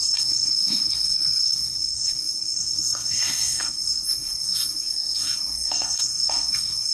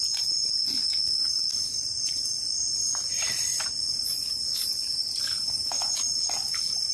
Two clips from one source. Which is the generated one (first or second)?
first